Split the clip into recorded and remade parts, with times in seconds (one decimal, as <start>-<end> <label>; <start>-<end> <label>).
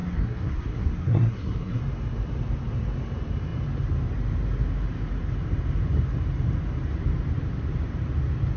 0.0-1.8 remade; 1.8-8.6 recorded